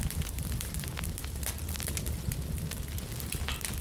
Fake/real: real